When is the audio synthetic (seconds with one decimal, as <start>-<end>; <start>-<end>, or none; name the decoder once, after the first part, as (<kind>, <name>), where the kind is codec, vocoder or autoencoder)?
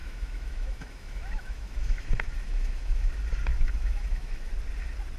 0.0-3.1 (autoencoder, DAC-VAE); 3.5-4.5